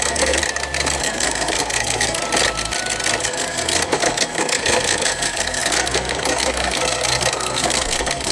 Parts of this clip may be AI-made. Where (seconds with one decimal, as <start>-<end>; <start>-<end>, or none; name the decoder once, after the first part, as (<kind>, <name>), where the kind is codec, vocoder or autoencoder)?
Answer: 0.0-0.4 (codec, SNAC); 1.0-2.2; 3.2-8.3